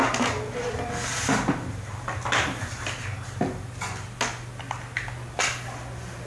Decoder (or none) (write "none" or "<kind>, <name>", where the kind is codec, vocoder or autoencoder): none